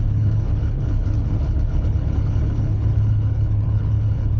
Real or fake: fake